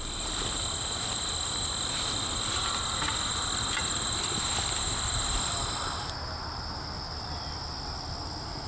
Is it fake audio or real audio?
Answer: real